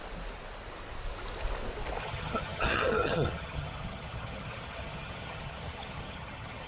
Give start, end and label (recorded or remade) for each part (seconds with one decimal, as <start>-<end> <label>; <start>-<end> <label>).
0.0-2.0 recorded; 2.0-6.7 remade